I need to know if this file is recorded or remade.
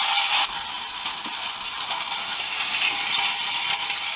remade